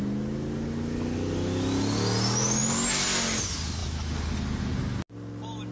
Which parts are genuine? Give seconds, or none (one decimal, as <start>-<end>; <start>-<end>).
0.0-5.7